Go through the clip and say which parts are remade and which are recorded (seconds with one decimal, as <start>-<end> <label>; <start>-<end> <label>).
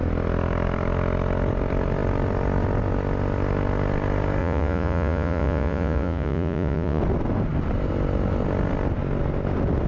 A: 0.0-4.4 recorded; 4.4-7.0 remade; 7.0-9.9 recorded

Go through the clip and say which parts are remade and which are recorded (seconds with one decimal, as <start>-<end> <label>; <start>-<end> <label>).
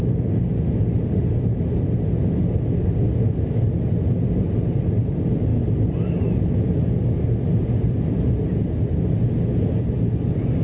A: 0.0-10.6 recorded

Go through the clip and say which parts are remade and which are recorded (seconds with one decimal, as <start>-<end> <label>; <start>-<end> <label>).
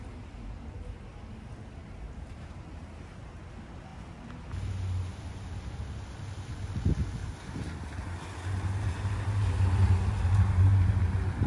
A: 0.0-1.8 recorded; 1.8-2.6 remade; 2.6-7.2 recorded; 7.2-8.3 remade; 8.3-11.5 recorded